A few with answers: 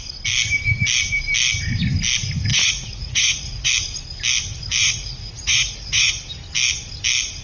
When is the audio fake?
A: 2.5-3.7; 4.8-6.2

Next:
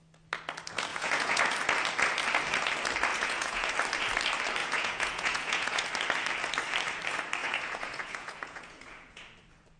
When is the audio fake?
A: 0.9-1.4; 3.1-3.7; 4.6-5.8; 7.4-9.2

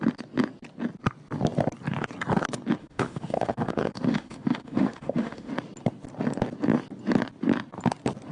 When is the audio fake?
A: 2.8-5.5

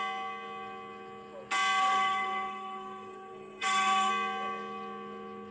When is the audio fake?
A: 1.8-4.1